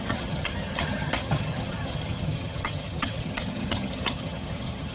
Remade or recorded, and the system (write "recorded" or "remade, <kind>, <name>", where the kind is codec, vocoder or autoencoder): remade, vocoder, HiFi-GAN